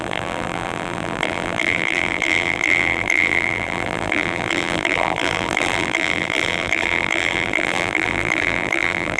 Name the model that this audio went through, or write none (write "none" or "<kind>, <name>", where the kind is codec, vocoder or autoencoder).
vocoder, BigVGAN v2